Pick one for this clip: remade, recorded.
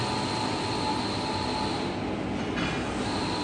recorded